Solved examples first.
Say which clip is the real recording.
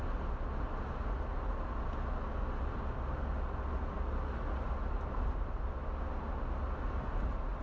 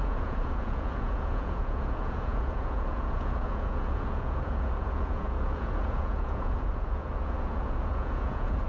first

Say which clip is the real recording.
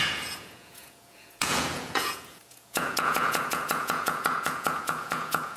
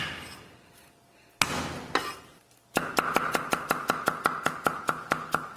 second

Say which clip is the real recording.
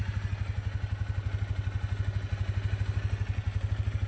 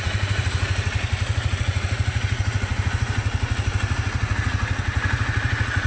first